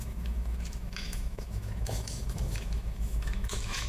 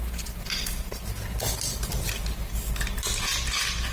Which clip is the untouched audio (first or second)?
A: second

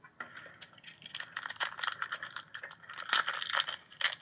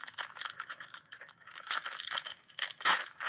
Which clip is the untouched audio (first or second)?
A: first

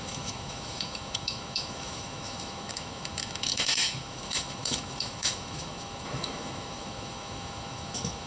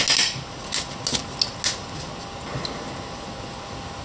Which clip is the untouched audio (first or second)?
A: second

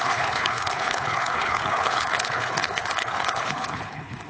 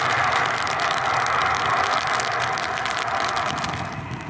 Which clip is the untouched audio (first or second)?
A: second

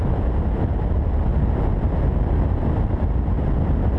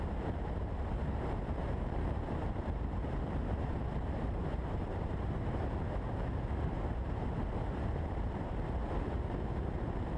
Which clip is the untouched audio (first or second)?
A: first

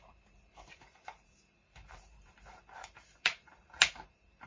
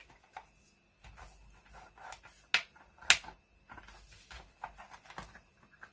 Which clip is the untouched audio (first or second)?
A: second